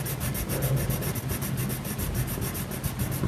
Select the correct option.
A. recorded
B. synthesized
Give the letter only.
A